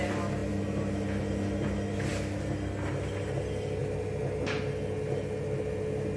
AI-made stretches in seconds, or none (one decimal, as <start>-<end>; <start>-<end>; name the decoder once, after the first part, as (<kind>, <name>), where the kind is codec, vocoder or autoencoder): none